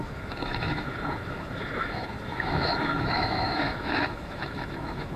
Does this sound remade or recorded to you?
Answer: remade